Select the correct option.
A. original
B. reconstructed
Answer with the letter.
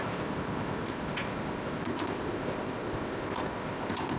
B